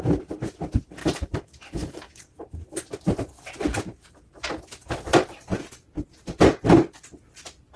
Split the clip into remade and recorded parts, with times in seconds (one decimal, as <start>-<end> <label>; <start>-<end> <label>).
0.0-1.0 recorded; 1.0-2.2 remade; 2.2-7.8 recorded